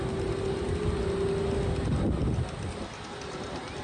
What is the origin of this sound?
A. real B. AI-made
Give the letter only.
A